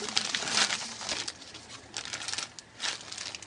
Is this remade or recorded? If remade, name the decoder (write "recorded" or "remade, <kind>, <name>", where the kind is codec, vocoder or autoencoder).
recorded